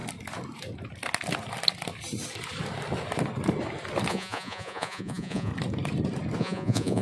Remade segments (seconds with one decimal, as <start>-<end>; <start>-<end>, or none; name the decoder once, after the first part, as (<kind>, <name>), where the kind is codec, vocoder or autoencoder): 4.1-5.5 (vocoder, Vocos); 6.4-7.0

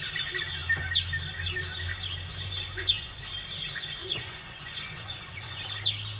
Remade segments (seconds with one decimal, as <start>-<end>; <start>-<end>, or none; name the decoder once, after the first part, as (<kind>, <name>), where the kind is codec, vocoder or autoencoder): 2.3-3.2 (vocoder, Vocos); 4.0-5.6